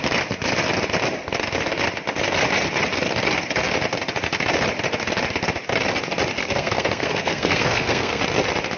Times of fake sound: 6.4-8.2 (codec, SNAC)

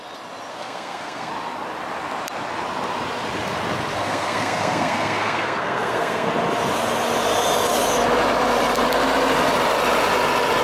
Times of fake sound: 0.5-1.3 (codec, SNAC); 4.0-6.3

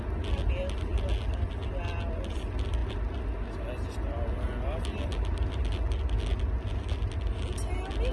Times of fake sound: none